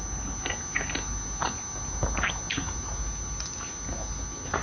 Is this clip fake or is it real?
real